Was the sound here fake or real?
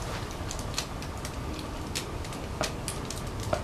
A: real